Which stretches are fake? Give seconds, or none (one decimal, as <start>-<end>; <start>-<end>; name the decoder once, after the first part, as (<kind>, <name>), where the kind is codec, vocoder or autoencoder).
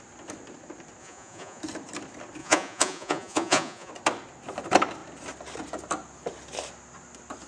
1.0-1.6 (vocoder, Vocos); 2.4-3.9